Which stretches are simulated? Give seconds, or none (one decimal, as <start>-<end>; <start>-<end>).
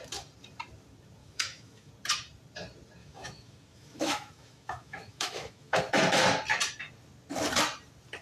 1.2-1.9; 3.0-5.8